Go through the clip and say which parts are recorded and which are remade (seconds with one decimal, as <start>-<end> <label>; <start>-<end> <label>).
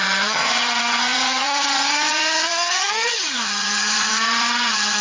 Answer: 0.0-5.0 remade